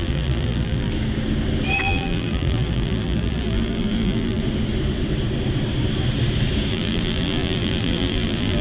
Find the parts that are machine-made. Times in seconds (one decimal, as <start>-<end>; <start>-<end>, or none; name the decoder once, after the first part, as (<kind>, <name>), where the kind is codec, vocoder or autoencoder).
0.0-0.9 (vocoder, BigVGAN v2); 1.8-4.4; 6.7-8.6